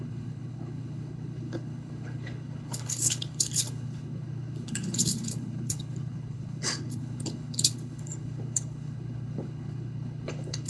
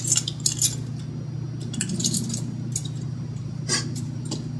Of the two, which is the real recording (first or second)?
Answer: second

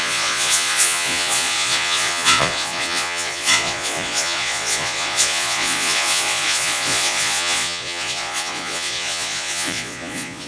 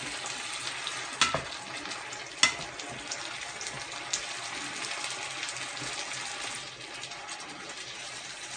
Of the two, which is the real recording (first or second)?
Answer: second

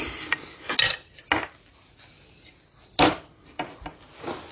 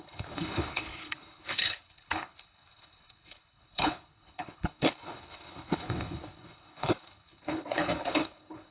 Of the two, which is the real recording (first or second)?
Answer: first